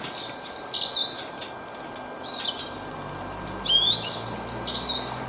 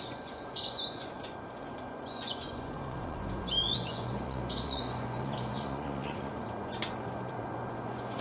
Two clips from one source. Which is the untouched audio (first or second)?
first